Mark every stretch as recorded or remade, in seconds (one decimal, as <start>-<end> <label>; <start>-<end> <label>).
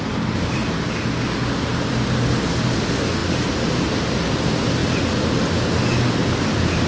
0.0-0.6 remade; 0.6-1.9 recorded; 1.9-3.2 remade; 3.2-3.9 recorded; 3.9-4.8 remade; 4.8-6.1 recorded; 6.1-6.9 remade